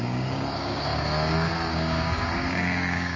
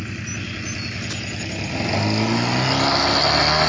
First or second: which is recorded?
second